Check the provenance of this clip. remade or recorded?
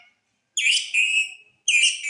recorded